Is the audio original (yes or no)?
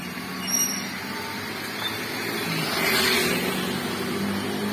yes